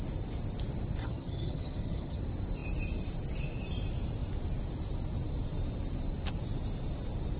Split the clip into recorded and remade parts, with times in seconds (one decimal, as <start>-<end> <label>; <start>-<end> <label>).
0.0-1.0 recorded; 1.0-2.2 remade; 2.2-7.4 recorded